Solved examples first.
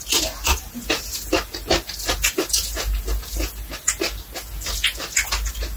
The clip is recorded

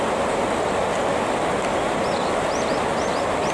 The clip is recorded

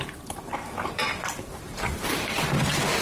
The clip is remade